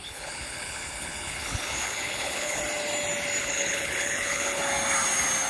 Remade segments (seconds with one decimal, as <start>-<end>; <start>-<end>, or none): 0.0-2.6; 3.4-4.6